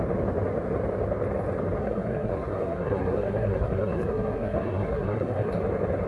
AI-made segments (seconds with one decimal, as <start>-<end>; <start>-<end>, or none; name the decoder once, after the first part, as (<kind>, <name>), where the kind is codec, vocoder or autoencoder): 1.8-5.5 (codec, SNAC)